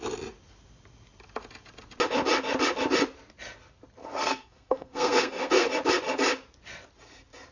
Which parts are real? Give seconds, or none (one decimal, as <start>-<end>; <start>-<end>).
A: 0.0-4.0; 5.7-7.5